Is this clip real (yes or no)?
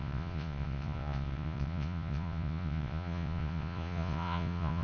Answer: no